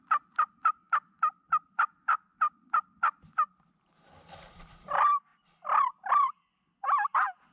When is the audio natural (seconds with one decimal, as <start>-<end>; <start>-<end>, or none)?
2.1-3.8